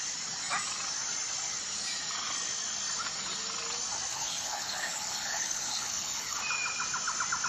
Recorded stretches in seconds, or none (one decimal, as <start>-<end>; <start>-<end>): 0.0-4.1; 6.4-7.5

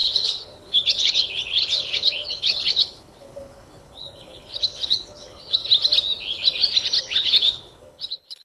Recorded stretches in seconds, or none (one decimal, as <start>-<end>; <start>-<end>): 5.6-7.0

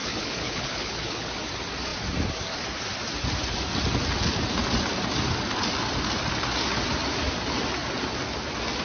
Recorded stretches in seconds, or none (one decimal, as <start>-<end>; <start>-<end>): 1.3-8.8

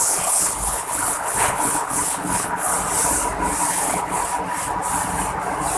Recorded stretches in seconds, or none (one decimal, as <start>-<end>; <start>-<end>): 2.7-3.7; 4.2-5.8